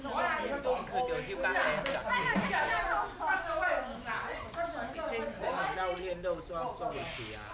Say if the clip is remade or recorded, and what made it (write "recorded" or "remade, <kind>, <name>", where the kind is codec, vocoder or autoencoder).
recorded